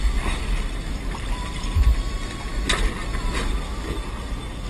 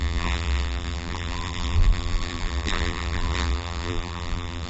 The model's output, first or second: second